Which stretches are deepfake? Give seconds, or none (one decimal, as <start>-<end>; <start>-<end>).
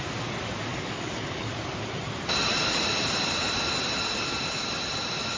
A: 0.7-1.5